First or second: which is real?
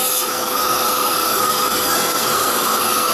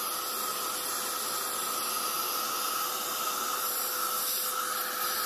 second